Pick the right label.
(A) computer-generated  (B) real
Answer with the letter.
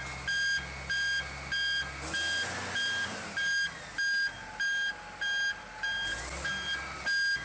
B